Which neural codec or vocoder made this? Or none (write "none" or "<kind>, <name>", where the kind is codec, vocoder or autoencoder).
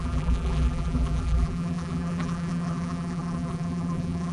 vocoder, BigVGAN v2